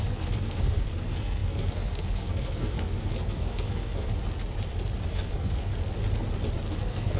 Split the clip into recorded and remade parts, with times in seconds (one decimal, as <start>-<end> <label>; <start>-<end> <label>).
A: 0.0-4.1 remade; 4.1-5.1 recorded; 5.1-5.7 remade; 5.7-6.8 recorded; 6.8-7.2 remade